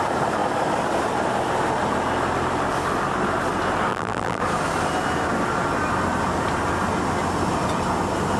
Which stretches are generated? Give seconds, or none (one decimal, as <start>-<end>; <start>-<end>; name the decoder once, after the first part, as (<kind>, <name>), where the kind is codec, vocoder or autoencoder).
3.9-4.4 (vocoder, BigVGAN v2)